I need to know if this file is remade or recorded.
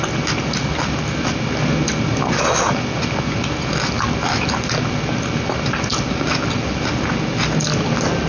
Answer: recorded